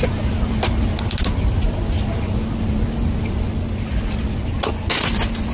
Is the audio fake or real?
real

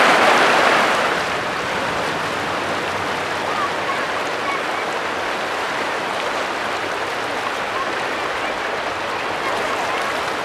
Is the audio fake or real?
real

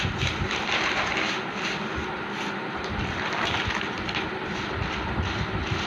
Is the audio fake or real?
real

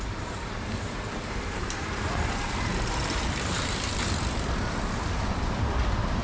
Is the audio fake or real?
fake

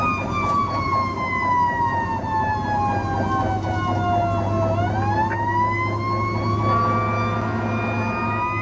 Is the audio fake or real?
real